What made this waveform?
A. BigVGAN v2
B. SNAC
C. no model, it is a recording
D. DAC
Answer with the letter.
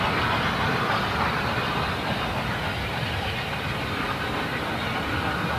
C